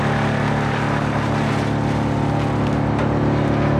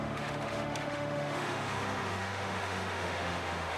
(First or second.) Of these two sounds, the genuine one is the first